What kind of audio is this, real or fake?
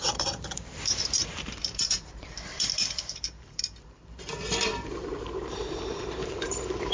fake